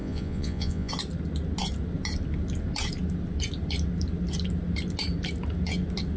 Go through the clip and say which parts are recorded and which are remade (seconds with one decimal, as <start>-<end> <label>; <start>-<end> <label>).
0.0-0.9 remade; 0.9-6.2 recorded